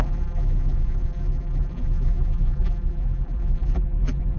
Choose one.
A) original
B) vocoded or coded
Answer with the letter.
B